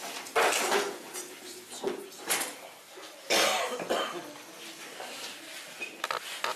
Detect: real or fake real